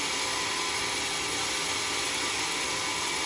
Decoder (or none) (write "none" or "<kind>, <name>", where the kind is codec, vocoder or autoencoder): none